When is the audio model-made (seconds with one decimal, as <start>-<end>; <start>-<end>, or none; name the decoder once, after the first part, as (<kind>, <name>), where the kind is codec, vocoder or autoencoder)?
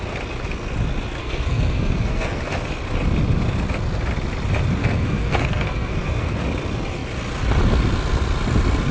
1.2-2.4 (codec, SNAC); 4.8-6.4